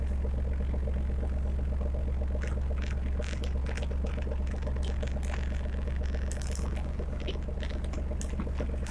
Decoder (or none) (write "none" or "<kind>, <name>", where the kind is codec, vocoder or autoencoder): none